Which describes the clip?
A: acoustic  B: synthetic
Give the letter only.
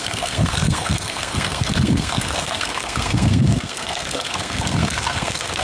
B